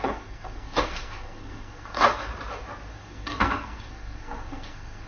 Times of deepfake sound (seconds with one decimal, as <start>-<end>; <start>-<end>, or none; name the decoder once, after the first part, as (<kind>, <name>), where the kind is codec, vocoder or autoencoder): 0.0-2.3 (codec, SNAC); 2.9-5.1